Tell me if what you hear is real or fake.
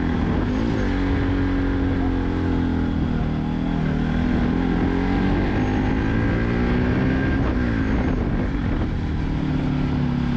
real